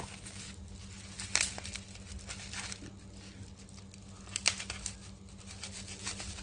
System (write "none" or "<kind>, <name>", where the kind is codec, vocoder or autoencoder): none